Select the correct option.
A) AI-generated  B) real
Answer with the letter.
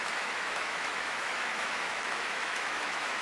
A